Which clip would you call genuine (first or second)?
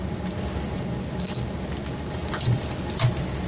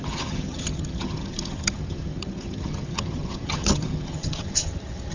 first